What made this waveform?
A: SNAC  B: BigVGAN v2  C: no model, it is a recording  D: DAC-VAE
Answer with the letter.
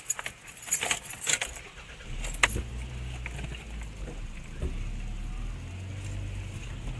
C